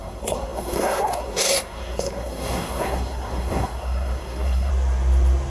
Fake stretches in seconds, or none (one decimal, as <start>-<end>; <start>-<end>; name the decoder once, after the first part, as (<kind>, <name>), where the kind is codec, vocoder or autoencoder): 0.0-4.7 (codec, SNAC)